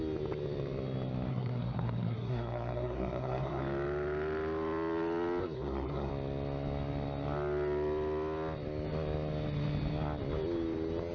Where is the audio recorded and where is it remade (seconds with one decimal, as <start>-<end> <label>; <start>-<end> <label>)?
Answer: 0.0-1.3 recorded; 1.3-3.6 remade; 3.6-5.4 recorded; 5.4-6.1 remade; 6.1-11.1 recorded